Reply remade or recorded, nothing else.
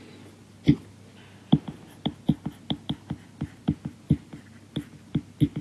recorded